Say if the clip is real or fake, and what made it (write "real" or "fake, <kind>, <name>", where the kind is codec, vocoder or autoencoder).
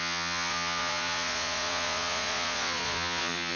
fake, vocoder, Vocos